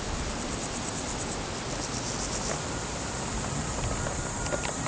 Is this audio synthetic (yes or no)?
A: no